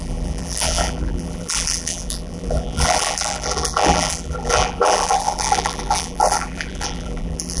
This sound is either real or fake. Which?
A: fake